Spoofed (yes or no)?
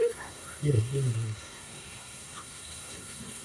yes